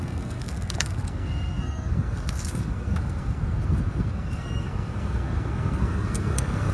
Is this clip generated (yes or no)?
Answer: yes